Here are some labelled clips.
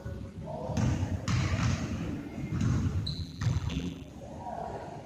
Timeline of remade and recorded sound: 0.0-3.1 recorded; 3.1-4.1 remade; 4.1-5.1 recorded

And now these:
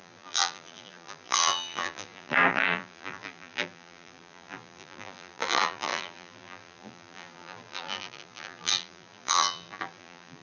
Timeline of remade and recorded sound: 0.0-10.4 remade

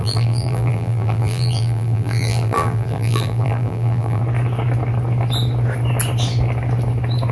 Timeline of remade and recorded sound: 0.0-4.2 remade; 4.2-7.3 recorded

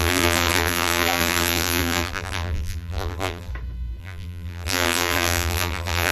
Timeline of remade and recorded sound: 0.0-3.5 remade; 3.5-4.0 recorded; 4.0-6.1 remade

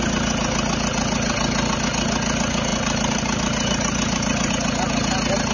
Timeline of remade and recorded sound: 0.0-2.7 recorded; 2.7-4.5 remade; 4.5-5.5 recorded